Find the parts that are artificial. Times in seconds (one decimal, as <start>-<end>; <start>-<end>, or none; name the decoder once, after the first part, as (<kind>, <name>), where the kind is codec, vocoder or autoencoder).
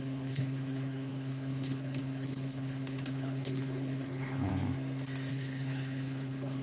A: 0.0-4.5 (codec, HILCodec); 5.3-6.6